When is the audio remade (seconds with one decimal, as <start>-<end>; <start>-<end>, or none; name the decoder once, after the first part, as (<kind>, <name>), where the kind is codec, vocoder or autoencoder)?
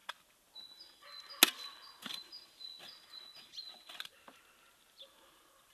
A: none